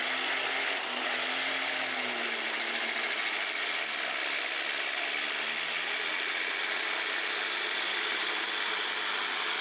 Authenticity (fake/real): real